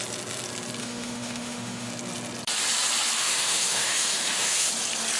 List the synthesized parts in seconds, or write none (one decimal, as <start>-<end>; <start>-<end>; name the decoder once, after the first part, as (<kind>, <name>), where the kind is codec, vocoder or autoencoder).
0.8-1.9 (autoencoder, DAC-VAE); 3.2-4.7